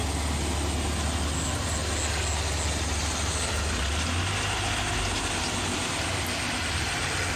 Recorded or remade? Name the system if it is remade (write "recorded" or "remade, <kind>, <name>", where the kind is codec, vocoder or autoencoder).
recorded